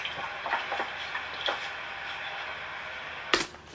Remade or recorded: recorded